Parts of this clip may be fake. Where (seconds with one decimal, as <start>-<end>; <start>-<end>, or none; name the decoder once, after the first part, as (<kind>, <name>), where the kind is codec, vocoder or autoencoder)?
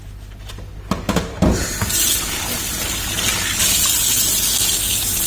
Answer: none